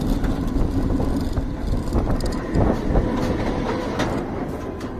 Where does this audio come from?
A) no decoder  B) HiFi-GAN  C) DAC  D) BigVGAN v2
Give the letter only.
A